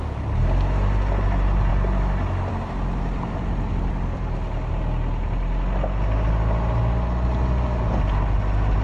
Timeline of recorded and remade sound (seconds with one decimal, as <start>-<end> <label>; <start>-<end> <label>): 0.0-8.8 recorded